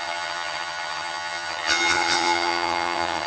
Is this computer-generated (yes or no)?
yes